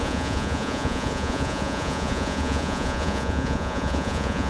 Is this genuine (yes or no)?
no